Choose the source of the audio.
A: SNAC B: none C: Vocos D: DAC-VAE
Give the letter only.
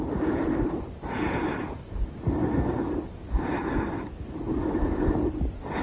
B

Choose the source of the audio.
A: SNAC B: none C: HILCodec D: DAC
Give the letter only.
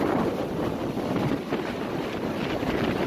B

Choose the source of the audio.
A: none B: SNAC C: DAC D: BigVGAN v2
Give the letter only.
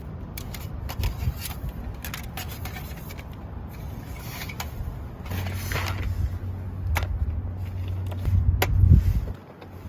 A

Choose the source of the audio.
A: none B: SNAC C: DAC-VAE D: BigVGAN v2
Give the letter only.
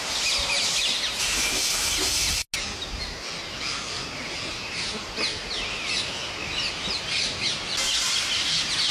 A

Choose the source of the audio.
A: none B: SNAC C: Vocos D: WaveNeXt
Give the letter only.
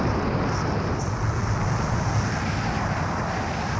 A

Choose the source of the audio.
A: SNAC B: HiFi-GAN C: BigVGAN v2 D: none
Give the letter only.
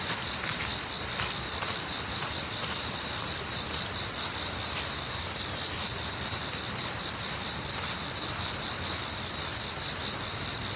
D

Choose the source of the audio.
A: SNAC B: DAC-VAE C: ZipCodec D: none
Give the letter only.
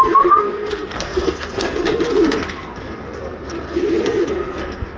A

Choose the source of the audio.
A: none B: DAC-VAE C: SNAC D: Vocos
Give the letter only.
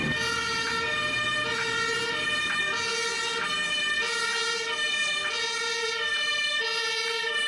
A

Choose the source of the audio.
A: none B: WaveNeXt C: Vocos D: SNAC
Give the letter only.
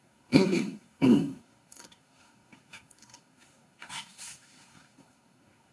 D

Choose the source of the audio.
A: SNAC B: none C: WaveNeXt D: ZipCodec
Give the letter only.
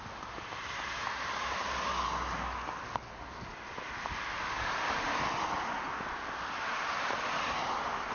B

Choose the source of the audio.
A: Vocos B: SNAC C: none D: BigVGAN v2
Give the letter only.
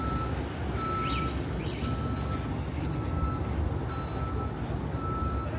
C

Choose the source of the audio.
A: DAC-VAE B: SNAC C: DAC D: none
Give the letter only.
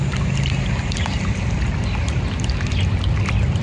D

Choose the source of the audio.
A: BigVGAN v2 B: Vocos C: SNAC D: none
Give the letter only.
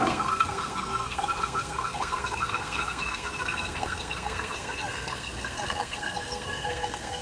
C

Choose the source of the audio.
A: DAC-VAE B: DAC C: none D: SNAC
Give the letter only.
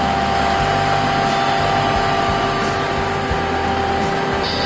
C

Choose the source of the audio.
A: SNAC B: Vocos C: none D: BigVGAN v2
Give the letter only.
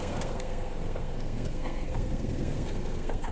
A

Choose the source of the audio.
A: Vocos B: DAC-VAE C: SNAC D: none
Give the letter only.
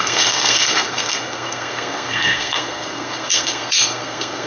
C